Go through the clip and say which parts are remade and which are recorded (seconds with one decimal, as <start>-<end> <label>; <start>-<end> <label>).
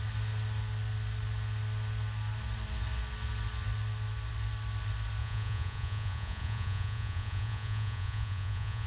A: 0.0-5.2 recorded; 5.2-8.9 remade